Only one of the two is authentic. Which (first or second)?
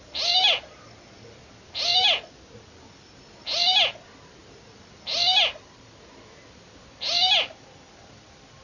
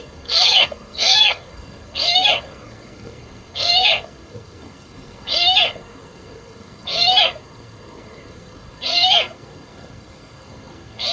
first